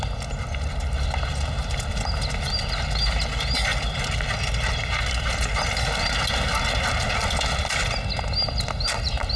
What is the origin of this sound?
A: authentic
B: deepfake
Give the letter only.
A